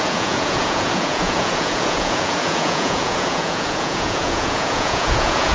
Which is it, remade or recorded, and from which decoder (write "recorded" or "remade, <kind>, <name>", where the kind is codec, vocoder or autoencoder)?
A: remade, vocoder, Vocos